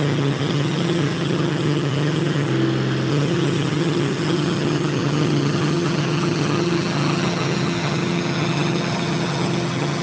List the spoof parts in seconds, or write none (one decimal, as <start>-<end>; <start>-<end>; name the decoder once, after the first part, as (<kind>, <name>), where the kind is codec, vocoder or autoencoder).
0.0-2.5 (vocoder, HiFi-GAN); 3.1-10.0